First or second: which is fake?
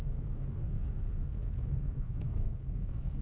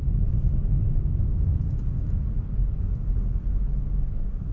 first